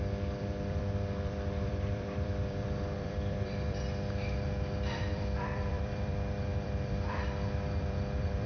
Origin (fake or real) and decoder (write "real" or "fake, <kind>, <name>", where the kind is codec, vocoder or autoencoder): fake, vocoder, BigVGAN v2